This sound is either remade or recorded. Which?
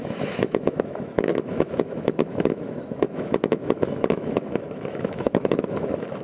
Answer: remade